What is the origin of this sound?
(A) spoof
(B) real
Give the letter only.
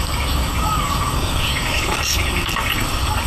A